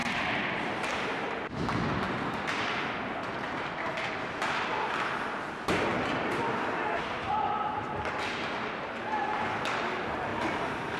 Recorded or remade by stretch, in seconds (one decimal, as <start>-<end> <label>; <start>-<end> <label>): 0.0-1.5 remade; 1.5-10.3 recorded; 10.3-11.0 remade